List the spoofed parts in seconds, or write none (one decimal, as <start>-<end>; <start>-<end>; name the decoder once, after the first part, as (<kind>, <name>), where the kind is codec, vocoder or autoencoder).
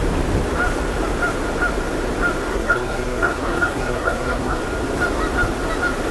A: 2.5-4.6 (codec, SNAC)